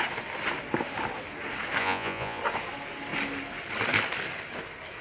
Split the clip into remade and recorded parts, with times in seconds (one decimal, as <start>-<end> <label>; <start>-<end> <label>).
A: 0.0-1.8 recorded; 1.8-2.4 remade; 2.4-5.0 recorded

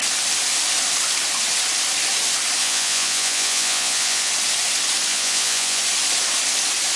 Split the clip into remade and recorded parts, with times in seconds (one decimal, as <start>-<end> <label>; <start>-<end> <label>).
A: 0.0-2.6 recorded; 2.6-4.3 remade; 4.3-5.1 recorded; 5.1-5.8 remade; 5.8-7.0 recorded

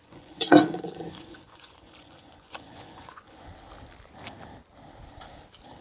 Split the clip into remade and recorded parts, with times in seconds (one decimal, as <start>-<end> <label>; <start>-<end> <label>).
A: 0.0-3.5 remade; 3.5-5.8 recorded

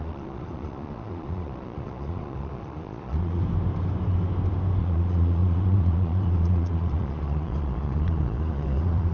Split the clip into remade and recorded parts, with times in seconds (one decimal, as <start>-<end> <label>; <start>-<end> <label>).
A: 0.0-3.4 remade; 3.4-4.8 recorded; 4.8-9.1 remade

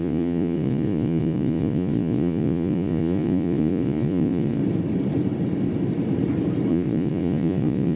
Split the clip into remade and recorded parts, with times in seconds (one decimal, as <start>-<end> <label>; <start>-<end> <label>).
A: 0.0-4.6 remade; 4.6-6.7 recorded; 6.7-8.0 remade

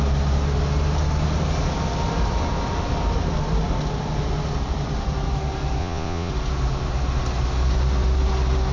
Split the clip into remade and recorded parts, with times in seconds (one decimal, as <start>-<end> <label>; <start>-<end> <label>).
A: 0.0-5.8 recorded; 5.8-6.3 remade; 6.3-8.7 recorded

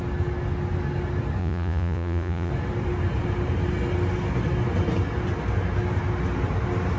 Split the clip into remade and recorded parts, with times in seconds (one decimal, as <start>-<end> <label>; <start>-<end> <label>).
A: 0.0-1.4 recorded; 1.4-2.5 remade; 2.5-7.0 recorded

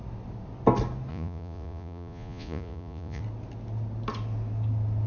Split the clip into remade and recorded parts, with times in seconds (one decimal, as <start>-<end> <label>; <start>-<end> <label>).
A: 0.0-1.1 recorded; 1.1-3.2 remade; 3.2-5.1 recorded